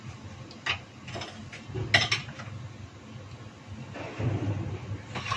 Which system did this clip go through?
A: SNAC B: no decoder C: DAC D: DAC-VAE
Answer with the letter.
B